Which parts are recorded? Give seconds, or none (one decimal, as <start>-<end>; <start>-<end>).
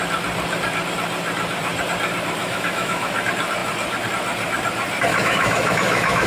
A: 0.0-2.4; 3.1-5.1